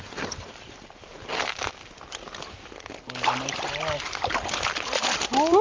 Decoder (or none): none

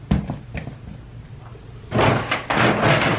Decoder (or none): none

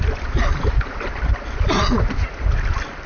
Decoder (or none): none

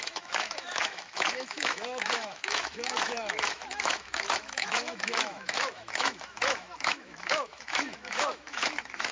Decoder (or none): autoencoder, DAC-VAE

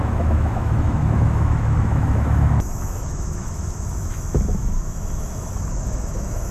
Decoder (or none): autoencoder, DAC-VAE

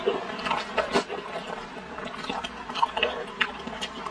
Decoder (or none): none